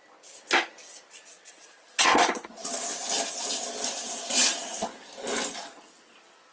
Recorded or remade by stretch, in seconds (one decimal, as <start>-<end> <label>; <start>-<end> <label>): 0.0-1.3 recorded; 1.3-2.6 remade; 2.6-6.5 recorded